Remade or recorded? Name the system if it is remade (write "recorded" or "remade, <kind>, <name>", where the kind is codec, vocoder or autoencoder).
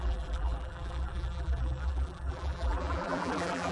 remade, vocoder, BigVGAN v2